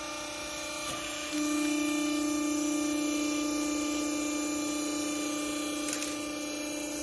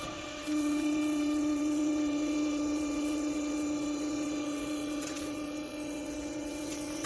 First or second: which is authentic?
first